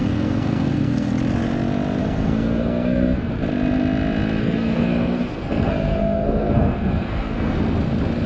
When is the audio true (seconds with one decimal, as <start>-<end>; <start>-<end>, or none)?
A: 1.1-2.0; 3.3-4.4; 7.6-8.3